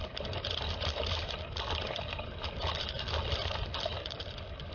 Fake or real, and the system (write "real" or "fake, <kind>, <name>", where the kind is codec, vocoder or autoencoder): fake, vocoder, BigVGAN v2